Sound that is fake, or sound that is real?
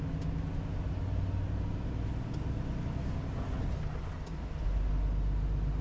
real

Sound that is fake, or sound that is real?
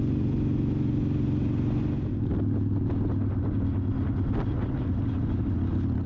real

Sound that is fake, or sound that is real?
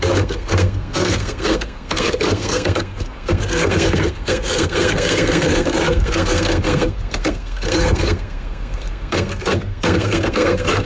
fake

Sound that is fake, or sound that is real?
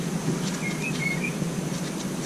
real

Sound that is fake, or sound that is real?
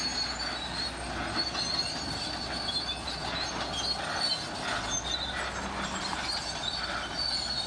real